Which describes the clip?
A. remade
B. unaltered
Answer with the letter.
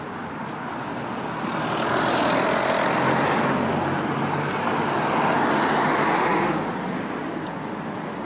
B